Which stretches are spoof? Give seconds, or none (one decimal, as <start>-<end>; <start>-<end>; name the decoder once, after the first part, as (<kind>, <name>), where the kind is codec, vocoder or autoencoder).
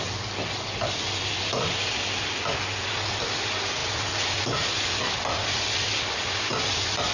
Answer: none